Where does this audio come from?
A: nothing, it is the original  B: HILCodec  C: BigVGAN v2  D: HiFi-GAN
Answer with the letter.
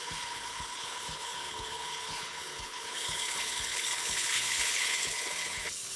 B